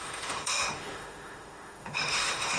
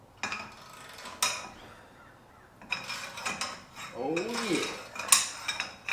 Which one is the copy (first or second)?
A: first